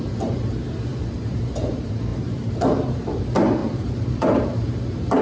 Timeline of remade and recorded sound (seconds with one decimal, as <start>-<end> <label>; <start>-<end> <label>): 0.0-0.9 recorded; 0.9-1.4 remade; 1.4-2.1 recorded; 2.1-3.2 remade; 3.2-3.6 recorded; 3.6-4.4 remade; 4.4-5.2 recorded